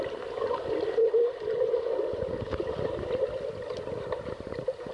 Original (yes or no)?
yes